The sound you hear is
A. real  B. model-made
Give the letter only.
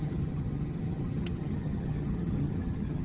B